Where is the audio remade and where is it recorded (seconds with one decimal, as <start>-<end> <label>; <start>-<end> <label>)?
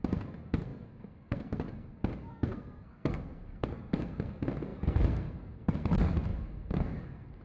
0.0-7.4 remade